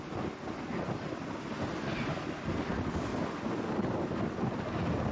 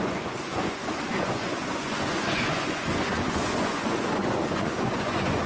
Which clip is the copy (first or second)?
second